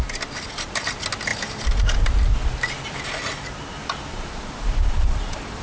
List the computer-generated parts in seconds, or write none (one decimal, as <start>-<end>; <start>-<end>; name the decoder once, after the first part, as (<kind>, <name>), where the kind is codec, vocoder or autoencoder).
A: 3.7-5.6 (vocoder, BigVGAN v2)